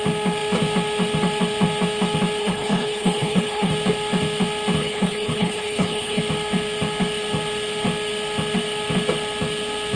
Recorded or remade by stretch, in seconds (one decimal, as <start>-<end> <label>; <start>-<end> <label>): 0.0-2.4 recorded; 2.4-3.7 remade; 3.7-4.8 recorded; 4.8-6.2 remade; 6.2-10.0 recorded